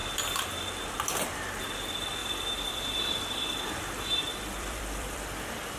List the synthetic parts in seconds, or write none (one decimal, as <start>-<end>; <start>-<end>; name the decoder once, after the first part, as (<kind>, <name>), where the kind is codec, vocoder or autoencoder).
0.0-1.4 (vocoder, BigVGAN v2); 2.2-5.8